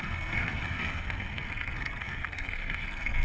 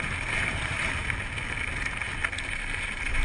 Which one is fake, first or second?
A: first